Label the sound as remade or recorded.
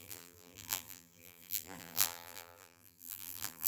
remade